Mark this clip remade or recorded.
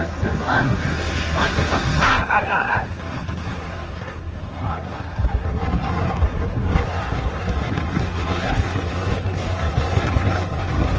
remade